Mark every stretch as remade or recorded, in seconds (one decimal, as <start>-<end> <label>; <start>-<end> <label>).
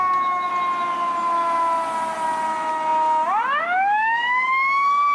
0.0-0.5 remade; 0.5-3.6 recorded; 3.6-5.1 remade